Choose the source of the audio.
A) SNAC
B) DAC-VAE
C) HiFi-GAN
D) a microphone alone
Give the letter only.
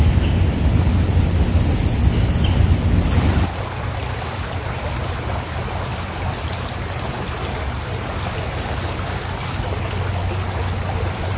D